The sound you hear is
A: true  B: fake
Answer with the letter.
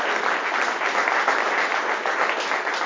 A